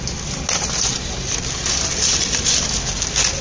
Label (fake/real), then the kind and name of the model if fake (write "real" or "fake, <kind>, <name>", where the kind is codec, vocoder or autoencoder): real